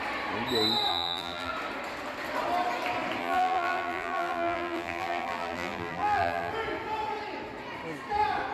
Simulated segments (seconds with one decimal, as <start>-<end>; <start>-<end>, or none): 0.9-1.5; 3.2-6.5